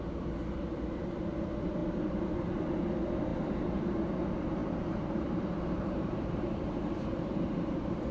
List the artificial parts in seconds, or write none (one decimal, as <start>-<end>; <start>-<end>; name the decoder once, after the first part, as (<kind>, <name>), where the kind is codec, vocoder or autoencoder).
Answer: 4.6-8.1 (vocoder, BigVGAN v2)

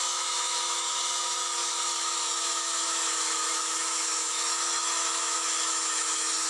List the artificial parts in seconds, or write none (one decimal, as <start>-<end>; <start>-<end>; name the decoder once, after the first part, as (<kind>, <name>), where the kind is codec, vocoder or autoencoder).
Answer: 0.0-6.5 (autoencoder, DAC-VAE)

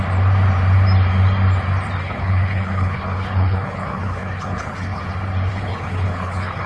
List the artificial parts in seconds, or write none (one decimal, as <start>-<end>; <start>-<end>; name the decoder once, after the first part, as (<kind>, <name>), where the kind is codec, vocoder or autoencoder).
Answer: 2.0-5.0 (codec, HILCodec); 5.5-6.7

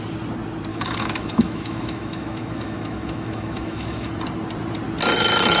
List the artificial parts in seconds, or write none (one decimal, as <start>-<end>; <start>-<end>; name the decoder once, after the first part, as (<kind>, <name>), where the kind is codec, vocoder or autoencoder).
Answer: 0.7-4.1 (autoencoder, DAC-VAE)

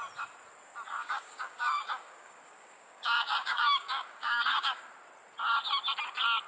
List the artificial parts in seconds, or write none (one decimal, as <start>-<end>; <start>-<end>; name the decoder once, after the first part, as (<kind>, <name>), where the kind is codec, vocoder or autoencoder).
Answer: 1.0-4.9 (codec, DAC)

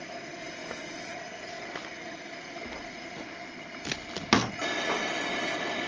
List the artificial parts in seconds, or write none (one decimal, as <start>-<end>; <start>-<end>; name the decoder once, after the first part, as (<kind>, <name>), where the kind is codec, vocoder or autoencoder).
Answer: none